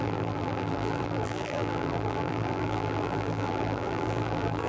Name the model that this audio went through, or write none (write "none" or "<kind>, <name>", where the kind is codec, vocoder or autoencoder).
vocoder, BigVGAN v2